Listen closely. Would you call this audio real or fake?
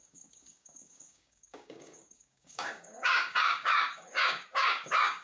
fake